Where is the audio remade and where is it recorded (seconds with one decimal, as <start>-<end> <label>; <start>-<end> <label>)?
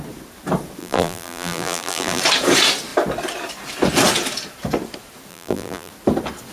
0.0-0.8 recorded; 0.8-2.2 remade; 2.2-5.3 recorded; 5.3-5.9 remade; 5.9-6.5 recorded